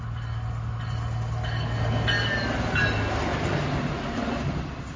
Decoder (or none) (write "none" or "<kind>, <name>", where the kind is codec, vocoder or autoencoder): none